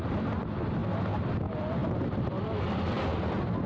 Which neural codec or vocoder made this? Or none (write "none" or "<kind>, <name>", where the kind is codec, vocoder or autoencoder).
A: none